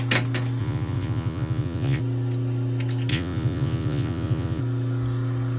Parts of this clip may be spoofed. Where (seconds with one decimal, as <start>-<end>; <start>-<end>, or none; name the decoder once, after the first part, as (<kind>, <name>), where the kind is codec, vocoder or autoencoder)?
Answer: 0.6-2.0 (vocoder, Vocos); 3.1-4.6